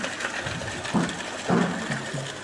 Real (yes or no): yes